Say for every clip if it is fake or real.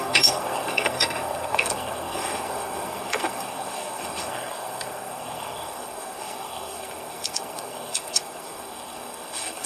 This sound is fake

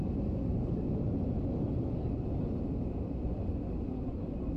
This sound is real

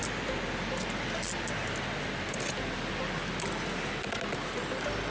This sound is real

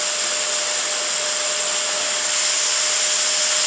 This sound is real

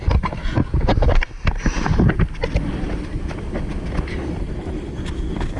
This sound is real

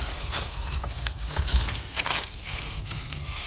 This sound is fake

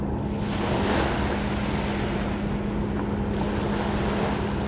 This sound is real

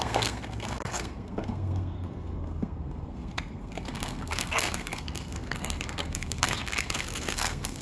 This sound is fake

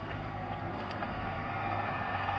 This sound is fake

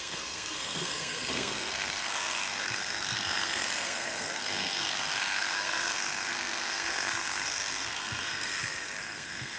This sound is fake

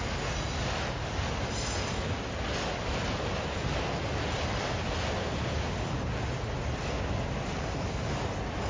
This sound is real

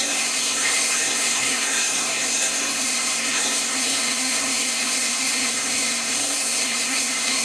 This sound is fake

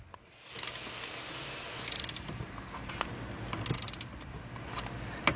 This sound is real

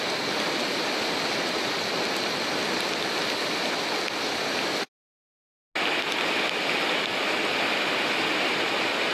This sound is real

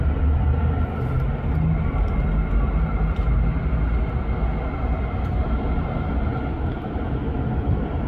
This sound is real